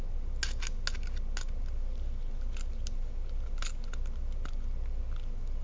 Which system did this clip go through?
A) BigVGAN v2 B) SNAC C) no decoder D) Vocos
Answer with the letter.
C